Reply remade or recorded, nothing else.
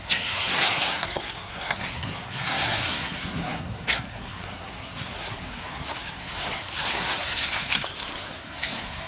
remade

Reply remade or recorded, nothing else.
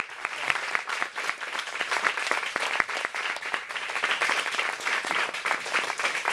remade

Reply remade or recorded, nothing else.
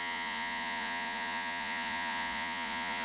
remade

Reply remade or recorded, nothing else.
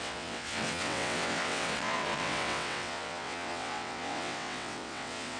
remade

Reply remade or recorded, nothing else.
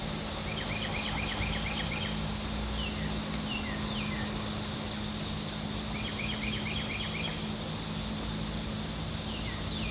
recorded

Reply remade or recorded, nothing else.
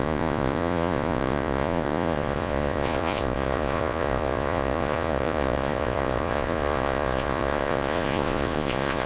remade